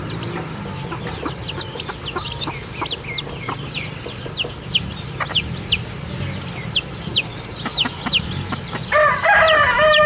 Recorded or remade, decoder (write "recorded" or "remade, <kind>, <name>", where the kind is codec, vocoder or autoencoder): recorded